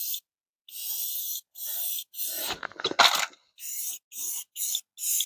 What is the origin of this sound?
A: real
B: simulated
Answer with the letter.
A